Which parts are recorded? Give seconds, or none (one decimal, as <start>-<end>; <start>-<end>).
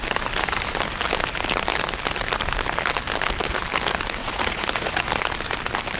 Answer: 0.0-4.2; 5.1-6.0